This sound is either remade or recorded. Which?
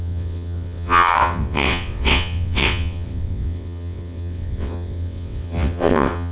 remade